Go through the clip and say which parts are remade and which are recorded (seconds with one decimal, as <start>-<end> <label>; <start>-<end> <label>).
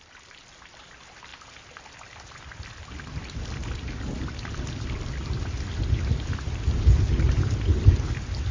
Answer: 0.0-8.5 recorded